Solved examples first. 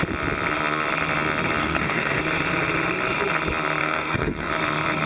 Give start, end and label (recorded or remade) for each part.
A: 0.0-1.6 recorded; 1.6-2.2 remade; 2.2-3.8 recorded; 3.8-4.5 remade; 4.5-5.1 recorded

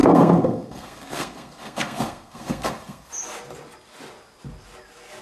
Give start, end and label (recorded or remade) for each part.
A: 0.0-3.1 remade; 3.1-5.2 recorded

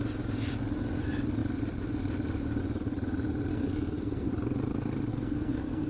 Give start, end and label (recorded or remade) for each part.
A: 0.0-3.5 recorded; 3.5-4.3 remade; 4.3-5.1 recorded; 5.1-5.9 remade

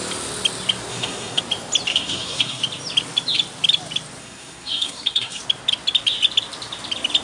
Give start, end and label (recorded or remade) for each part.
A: 0.0-0.9 recorded; 0.9-1.4 remade; 1.4-1.9 recorded; 1.9-2.6 remade; 2.6-4.2 recorded; 4.2-5.4 remade; 5.4-7.2 recorded

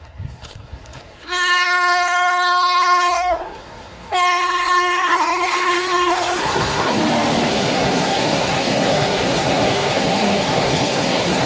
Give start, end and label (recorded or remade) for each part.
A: 0.0-7.0 remade; 7.0-7.5 recorded; 7.5-11.5 remade

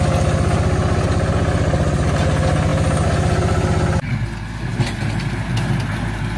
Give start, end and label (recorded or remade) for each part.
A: 0.0-6.4 recorded

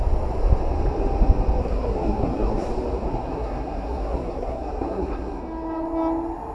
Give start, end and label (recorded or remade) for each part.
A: 0.0-1.6 recorded; 1.6-2.7 remade; 2.7-3.1 recorded; 3.1-5.4 remade; 5.4-6.5 recorded

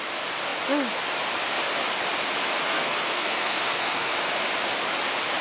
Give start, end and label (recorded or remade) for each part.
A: 0.0-2.7 recorded; 2.7-4.1 remade; 4.1-5.4 recorded